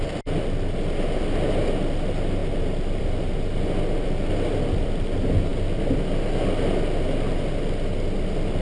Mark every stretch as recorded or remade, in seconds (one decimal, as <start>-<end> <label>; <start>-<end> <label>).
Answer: 0.0-8.6 recorded